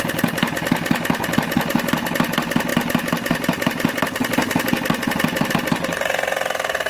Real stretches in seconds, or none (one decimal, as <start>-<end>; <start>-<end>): 0.0-6.9